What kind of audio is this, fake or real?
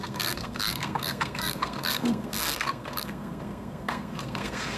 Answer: fake